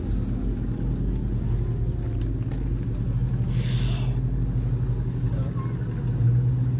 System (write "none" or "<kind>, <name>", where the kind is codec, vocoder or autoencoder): none